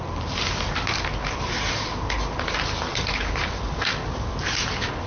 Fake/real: real